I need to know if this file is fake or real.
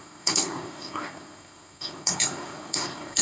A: fake